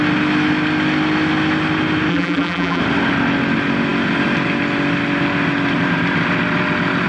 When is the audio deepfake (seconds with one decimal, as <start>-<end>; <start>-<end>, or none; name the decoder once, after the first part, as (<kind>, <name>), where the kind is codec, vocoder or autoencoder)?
2.1-2.8 (vocoder, BigVGAN v2)